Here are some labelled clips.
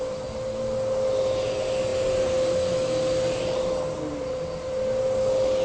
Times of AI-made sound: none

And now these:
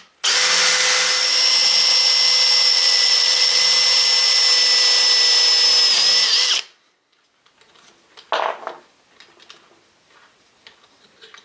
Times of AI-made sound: 2.7-3.6 (vocoder, WaveNeXt)

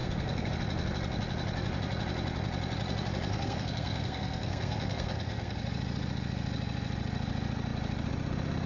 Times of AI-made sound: 0.0-0.5 (codec, SNAC); 3.3-5.6